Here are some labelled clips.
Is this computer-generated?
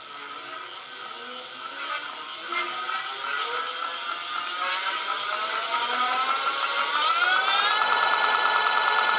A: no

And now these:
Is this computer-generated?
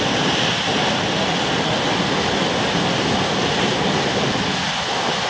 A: no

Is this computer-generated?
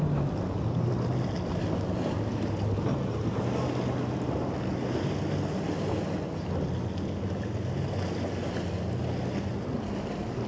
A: no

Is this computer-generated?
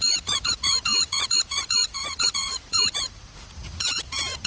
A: yes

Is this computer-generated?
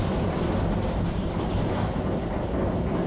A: no